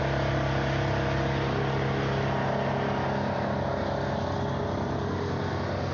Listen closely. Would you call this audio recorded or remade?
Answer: recorded